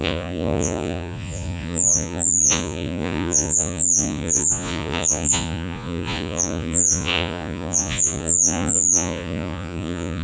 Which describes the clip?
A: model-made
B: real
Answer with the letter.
A